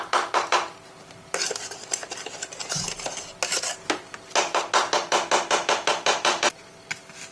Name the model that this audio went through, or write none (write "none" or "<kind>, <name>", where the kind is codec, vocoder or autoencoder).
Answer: none